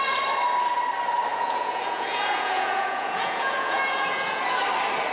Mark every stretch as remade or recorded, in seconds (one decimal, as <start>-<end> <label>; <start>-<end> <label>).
0.0-1.3 recorded; 1.3-4.4 remade; 4.4-5.1 recorded